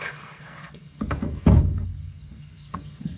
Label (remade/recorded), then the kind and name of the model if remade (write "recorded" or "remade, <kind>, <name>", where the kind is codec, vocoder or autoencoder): remade, codec, SNAC